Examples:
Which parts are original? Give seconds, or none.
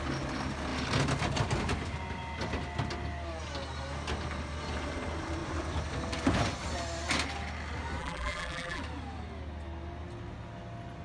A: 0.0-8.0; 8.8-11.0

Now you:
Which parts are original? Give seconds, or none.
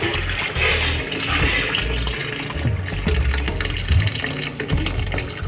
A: 0.0-5.5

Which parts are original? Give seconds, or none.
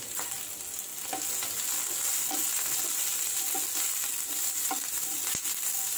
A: 0.0-6.0